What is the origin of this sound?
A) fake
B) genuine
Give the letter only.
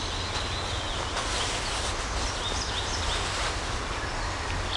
B